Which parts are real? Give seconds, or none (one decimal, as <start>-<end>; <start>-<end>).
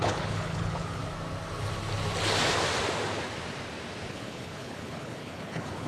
1.0-4.1